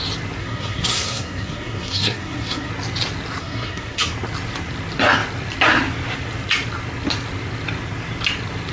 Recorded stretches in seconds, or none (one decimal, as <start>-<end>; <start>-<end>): 0.0-0.4; 2.7-3.4; 4.1-8.7